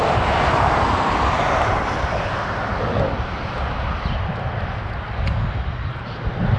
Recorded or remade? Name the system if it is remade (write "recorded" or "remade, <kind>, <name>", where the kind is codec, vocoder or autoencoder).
recorded